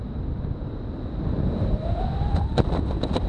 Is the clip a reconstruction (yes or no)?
no